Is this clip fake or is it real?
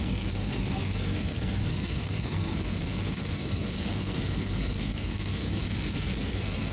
fake